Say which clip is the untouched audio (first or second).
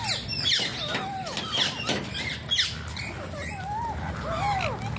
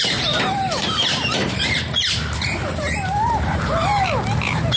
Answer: first